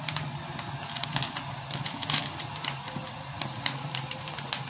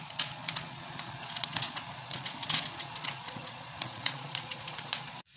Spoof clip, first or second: second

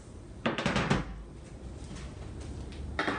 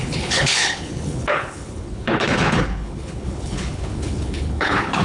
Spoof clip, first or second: second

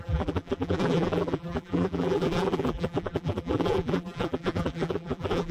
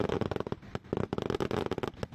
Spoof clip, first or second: first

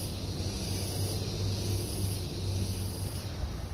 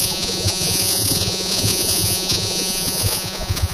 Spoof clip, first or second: second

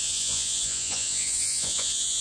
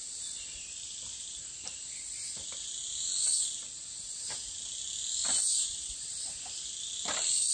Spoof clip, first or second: first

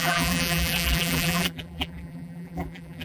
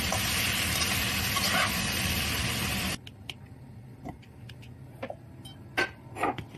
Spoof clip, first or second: first